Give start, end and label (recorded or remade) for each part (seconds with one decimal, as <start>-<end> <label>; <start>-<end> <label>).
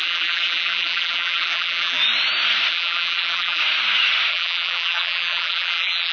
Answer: 0.0-2.0 remade; 2.0-2.7 recorded; 2.7-3.6 remade; 3.6-4.3 recorded; 4.3-6.1 remade